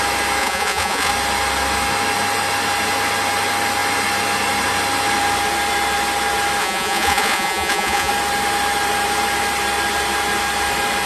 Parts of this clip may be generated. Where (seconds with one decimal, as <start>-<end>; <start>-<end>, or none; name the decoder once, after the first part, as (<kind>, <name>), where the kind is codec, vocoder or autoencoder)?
0.4-1.1 (vocoder, Vocos); 6.6-8.1